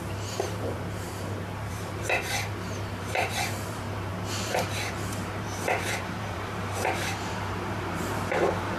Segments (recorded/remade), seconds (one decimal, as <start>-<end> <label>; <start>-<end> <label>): 0.0-8.8 remade